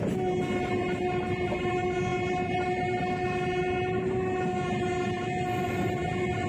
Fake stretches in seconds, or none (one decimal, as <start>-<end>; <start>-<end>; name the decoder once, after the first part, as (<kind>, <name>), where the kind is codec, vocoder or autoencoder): none